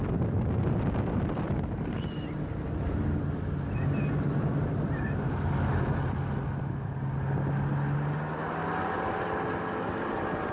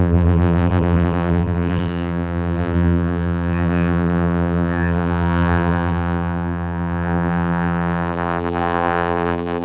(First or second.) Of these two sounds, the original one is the first